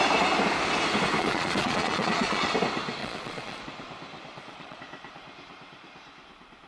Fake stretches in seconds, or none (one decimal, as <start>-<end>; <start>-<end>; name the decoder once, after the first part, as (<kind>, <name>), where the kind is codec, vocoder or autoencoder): 1.2-2.5 (vocoder, Vocos); 3.0-3.6; 4.3-4.8